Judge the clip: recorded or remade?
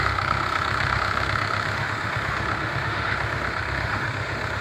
remade